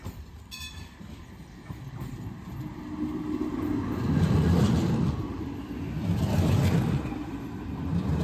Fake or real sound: real